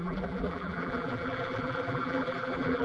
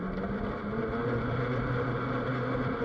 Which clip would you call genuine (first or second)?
second